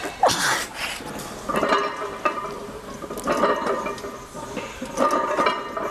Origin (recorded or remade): recorded